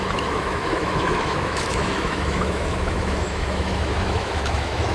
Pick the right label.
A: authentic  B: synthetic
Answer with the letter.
B